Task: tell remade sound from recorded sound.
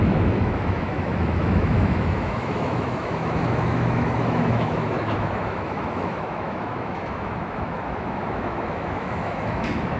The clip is remade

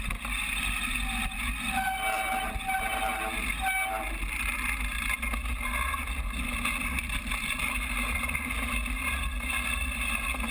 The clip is recorded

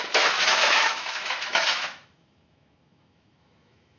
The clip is remade